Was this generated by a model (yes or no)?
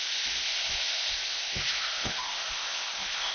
yes